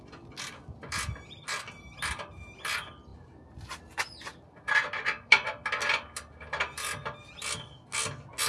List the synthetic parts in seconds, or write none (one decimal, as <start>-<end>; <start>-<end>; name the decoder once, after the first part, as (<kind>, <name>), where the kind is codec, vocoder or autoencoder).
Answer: none